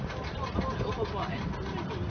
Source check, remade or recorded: recorded